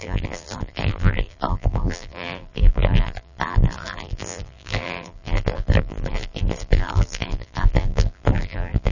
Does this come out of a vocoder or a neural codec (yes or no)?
yes